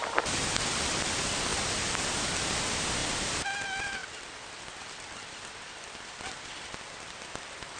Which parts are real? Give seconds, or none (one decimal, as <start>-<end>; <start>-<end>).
3.0-3.6